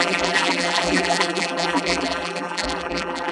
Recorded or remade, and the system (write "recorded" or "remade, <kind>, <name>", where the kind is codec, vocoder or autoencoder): remade, vocoder, BigVGAN v2